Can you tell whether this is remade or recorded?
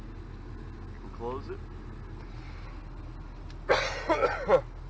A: recorded